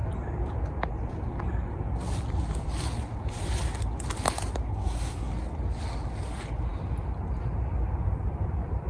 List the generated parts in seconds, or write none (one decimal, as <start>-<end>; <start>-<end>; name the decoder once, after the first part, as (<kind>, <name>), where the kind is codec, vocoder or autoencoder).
4.7-5.3 (codec, SNAC)